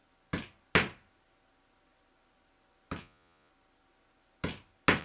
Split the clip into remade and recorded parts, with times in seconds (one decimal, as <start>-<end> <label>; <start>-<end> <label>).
0.0-3.0 recorded; 3.0-3.5 remade; 3.5-5.0 recorded